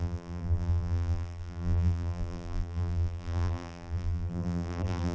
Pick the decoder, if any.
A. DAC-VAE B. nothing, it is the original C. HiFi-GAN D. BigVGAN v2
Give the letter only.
D